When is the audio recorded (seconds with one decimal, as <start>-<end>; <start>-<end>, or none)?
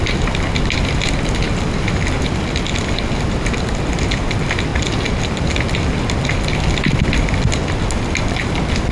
0.0-8.9